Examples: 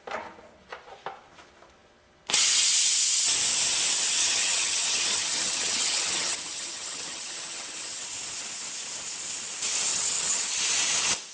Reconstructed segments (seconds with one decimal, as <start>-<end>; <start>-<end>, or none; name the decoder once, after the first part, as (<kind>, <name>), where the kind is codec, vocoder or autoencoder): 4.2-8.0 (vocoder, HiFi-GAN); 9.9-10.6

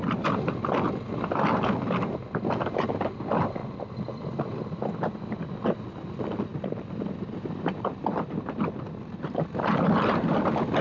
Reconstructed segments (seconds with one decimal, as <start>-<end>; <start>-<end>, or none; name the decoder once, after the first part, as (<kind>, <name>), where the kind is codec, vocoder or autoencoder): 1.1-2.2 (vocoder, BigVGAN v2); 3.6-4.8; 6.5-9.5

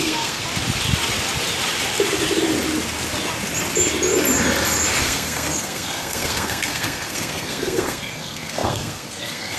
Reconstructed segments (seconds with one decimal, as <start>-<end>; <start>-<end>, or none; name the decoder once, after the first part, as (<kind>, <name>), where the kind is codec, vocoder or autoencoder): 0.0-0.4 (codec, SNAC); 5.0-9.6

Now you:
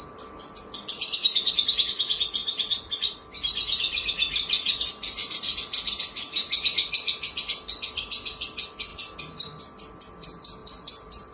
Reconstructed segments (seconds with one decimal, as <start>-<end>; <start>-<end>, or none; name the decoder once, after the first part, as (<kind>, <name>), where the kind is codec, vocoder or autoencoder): 2.4-5.4 (vocoder, BigVGAN v2); 10.6-11.3